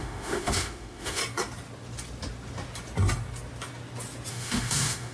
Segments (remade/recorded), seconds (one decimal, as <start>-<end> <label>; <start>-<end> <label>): 0.0-1.2 remade; 1.2-4.3 recorded; 4.3-5.1 remade